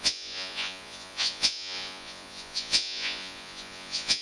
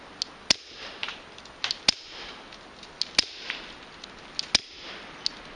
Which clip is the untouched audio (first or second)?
second